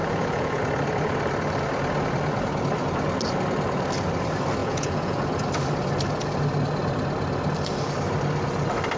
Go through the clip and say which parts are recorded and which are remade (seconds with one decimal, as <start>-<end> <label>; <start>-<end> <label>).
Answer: 0.0-0.6 remade; 0.6-4.6 recorded; 4.6-5.2 remade; 5.2-9.0 recorded